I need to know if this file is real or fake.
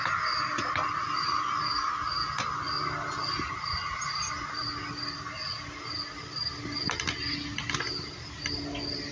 real